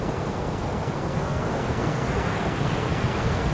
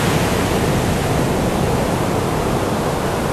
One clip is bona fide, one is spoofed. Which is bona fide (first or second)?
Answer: second